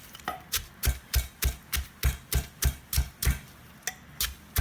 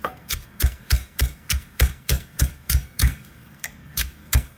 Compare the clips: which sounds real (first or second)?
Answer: first